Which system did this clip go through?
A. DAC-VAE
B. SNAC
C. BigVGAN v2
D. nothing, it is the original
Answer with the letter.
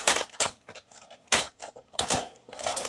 B